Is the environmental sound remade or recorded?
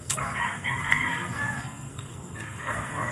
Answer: remade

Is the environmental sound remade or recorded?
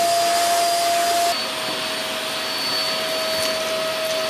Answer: recorded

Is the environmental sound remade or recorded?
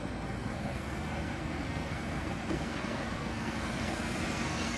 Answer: remade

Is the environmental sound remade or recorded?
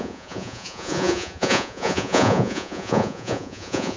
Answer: remade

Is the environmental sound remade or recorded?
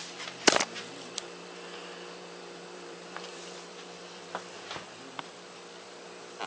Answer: remade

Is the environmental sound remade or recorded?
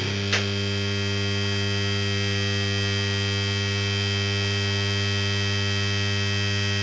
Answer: recorded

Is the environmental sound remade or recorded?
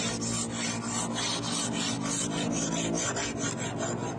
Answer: recorded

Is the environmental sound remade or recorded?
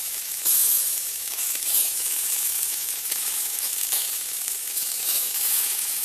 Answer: remade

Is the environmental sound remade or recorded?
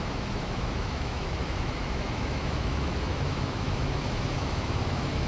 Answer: remade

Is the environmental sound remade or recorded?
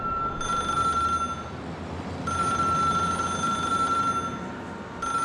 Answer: recorded